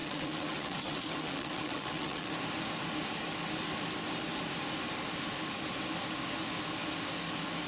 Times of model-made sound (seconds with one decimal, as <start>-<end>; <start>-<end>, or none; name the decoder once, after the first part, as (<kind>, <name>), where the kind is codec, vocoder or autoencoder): 0.0-2.3 (vocoder, WaveNeXt)

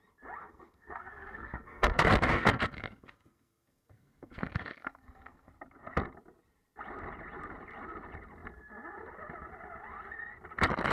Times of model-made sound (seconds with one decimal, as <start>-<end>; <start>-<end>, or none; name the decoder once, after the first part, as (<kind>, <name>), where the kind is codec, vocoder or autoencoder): 0.4-5.5 (codec, SNAC)